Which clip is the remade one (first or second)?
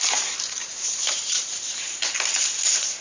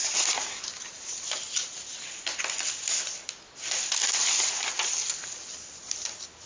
first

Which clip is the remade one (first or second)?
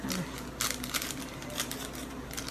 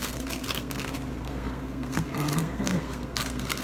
second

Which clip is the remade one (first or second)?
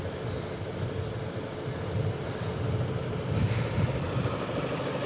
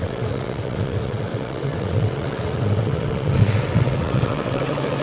second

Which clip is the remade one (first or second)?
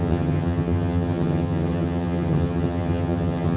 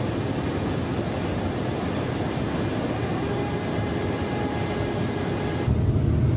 first